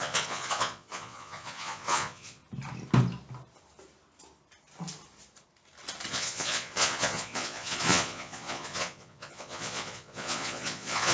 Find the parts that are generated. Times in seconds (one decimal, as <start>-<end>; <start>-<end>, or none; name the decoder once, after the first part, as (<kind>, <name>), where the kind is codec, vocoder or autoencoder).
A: 0.0-2.4 (vocoder, Vocos); 6.1-11.1